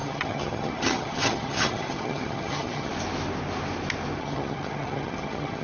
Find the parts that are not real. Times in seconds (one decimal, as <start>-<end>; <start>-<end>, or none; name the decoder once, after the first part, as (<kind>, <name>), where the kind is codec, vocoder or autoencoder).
0.0-2.9 (vocoder, HiFi-GAN); 4.2-5.6